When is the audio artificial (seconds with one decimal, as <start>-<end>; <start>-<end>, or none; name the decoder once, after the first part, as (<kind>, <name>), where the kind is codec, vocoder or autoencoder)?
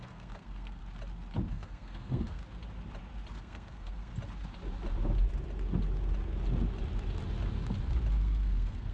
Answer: 0.0-0.8 (codec, SNAC); 1.5-2.4; 3.3-4.1; 8.1-8.9